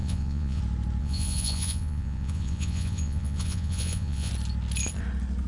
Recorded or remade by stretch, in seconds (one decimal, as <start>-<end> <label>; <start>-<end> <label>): 0.0-0.6 remade; 0.6-1.0 recorded; 1.0-4.3 remade; 4.3-5.5 recorded